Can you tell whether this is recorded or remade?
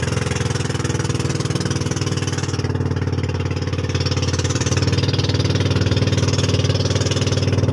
recorded